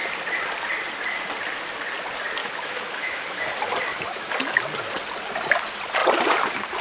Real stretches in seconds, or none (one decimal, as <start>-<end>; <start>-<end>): 0.0-2.4; 3.4-3.9; 4.6-6.8

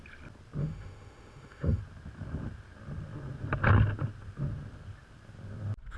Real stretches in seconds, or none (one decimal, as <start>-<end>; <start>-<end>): 0.0-0.6; 1.8-6.0

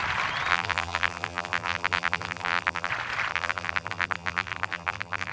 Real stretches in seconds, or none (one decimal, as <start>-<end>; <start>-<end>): 0.0-0.5; 2.9-3.3

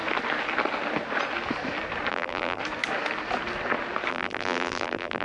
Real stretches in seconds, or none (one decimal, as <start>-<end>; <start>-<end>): 0.0-2.1; 2.6-4.1

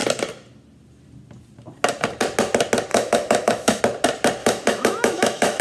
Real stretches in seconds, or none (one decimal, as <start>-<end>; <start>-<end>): 0.0-2.9; 3.8-4.4

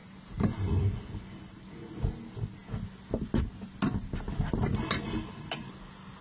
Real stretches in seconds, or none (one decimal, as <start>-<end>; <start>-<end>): 0.7-6.2

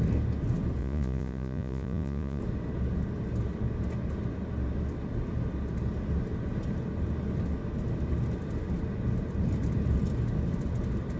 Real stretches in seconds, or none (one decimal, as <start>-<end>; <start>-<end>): 0.0-0.8; 2.4-11.2

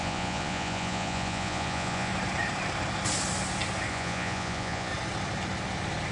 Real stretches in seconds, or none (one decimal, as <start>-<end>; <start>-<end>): 2.1-3.9; 4.9-6.1